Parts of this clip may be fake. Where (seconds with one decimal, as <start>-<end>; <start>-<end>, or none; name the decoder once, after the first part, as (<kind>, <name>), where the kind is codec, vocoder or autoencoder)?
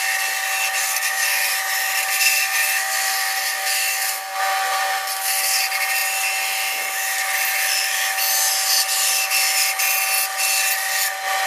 0.8-1.5 (codec, SNAC); 2.1-5.6